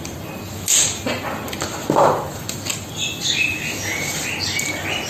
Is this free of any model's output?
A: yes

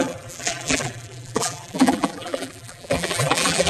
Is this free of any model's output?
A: no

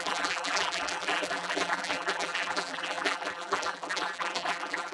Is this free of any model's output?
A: no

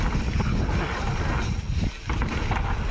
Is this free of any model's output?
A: yes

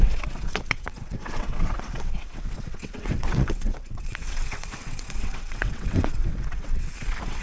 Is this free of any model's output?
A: no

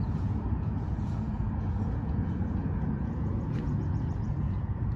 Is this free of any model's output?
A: no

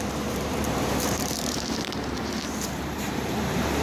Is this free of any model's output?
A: no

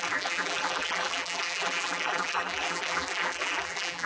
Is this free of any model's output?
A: no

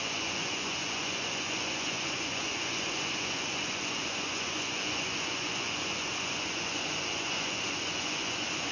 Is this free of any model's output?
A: no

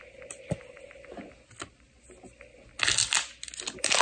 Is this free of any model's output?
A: yes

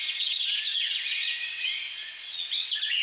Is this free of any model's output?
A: no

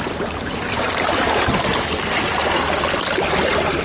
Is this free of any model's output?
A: yes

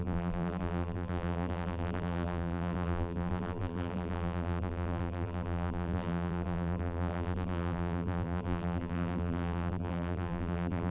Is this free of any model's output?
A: no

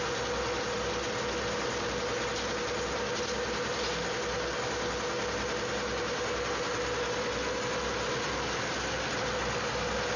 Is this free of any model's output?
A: yes